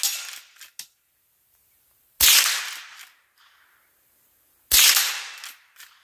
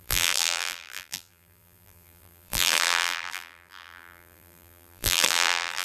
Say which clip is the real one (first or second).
first